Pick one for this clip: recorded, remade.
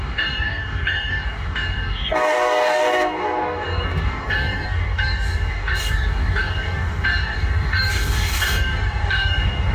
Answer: remade